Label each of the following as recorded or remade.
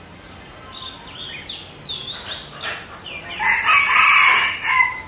recorded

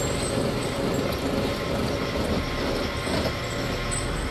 recorded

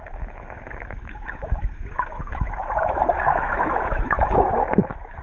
remade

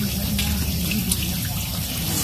recorded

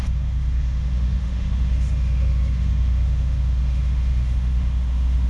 remade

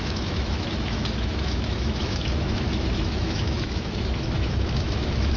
remade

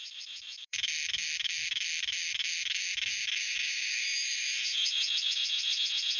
remade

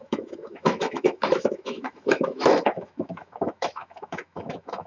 remade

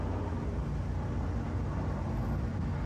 recorded